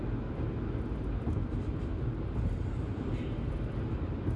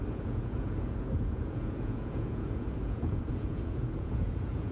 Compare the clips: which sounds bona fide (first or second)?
first